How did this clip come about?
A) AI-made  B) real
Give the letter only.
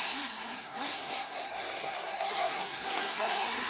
A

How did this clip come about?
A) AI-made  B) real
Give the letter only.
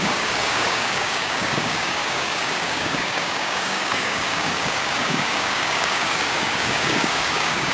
A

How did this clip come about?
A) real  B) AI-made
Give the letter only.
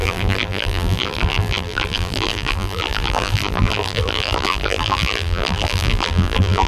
B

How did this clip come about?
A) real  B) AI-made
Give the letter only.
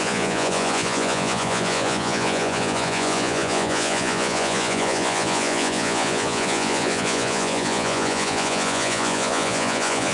B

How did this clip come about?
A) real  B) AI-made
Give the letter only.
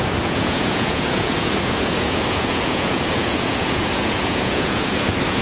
B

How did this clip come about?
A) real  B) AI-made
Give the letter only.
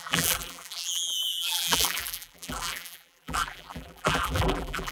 B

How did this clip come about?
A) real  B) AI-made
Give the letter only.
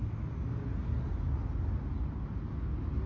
A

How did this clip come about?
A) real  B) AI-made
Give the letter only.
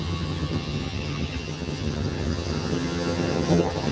B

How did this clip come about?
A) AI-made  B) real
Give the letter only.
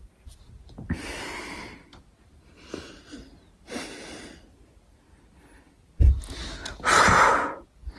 B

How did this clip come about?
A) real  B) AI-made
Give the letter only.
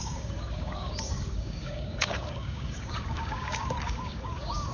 B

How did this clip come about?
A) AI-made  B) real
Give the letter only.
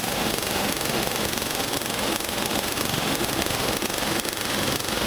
A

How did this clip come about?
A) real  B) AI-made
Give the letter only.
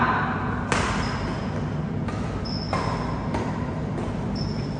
A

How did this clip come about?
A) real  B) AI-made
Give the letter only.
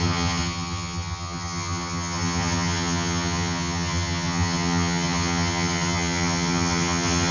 B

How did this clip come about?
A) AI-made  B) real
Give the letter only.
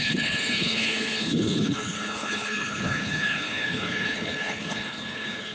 A